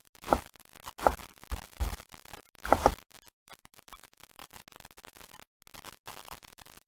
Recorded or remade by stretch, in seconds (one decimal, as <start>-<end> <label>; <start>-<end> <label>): 0.0-0.7 remade; 0.7-1.7 recorded; 1.7-4.4 remade; 4.4-6.1 recorded; 6.1-6.9 remade